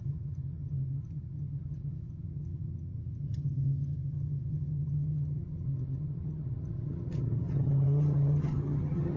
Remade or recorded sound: remade